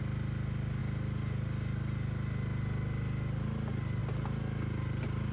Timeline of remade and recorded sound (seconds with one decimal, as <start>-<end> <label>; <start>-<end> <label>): 0.0-5.3 recorded